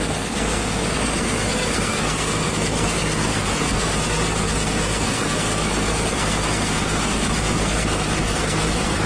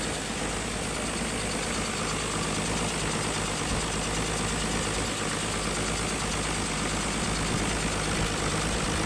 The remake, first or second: first